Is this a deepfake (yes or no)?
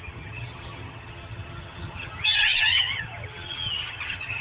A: yes